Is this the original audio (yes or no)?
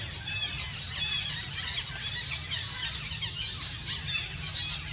yes